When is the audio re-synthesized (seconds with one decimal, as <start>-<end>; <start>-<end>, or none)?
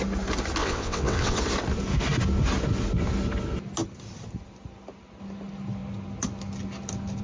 0.6-1.4